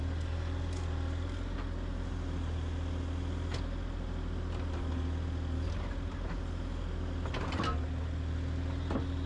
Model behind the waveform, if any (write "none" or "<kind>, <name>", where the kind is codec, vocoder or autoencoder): none